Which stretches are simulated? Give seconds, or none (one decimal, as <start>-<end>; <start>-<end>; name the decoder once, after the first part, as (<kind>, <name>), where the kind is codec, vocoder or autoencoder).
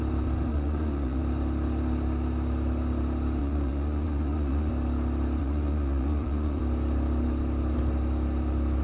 0.5-1.2 (vocoder, Vocos); 3.4-4.7; 5.4-6.6